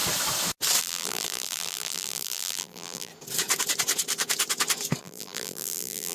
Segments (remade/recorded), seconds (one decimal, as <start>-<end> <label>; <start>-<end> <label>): 0.0-0.8 recorded; 0.8-3.1 remade; 3.1-5.0 recorded; 5.0-6.1 remade